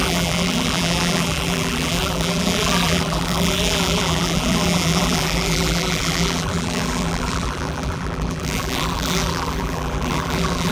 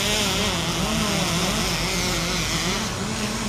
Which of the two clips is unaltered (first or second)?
second